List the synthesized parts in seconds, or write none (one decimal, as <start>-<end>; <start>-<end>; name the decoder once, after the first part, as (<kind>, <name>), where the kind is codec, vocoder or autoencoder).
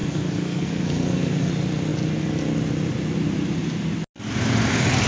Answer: 0.0-1.5 (codec, SNAC)